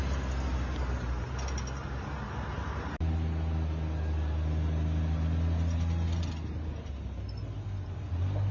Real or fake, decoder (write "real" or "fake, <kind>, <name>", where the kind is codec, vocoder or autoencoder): real